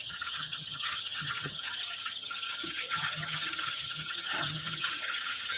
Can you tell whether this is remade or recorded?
remade